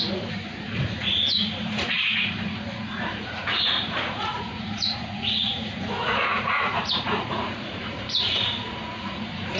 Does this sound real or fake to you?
fake